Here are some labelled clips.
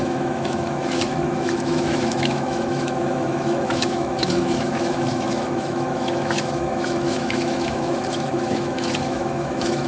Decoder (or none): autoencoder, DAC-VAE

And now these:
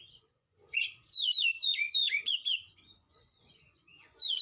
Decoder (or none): vocoder, Vocos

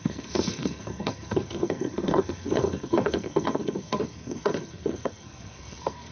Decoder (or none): codec, SNAC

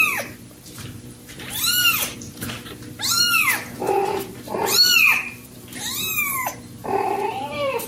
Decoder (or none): vocoder, BigVGAN v2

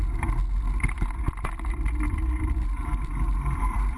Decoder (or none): vocoder, BigVGAN v2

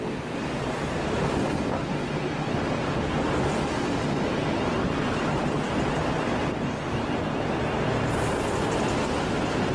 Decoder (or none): none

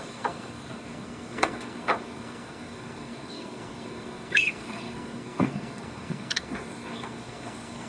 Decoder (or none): codec, SNAC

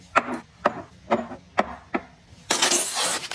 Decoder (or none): none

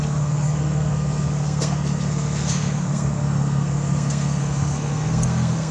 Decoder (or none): codec, SNAC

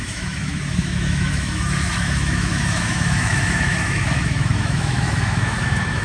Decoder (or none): autoencoder, DAC-VAE